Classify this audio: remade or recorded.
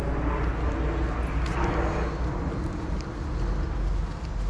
recorded